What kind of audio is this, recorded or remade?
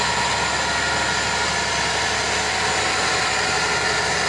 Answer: recorded